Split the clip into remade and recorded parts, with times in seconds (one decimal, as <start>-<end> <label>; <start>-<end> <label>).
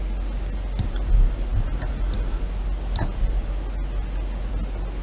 0.0-5.0 recorded